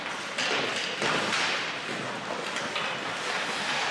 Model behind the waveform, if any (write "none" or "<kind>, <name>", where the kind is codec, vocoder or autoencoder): none